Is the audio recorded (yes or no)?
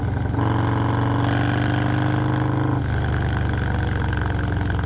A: yes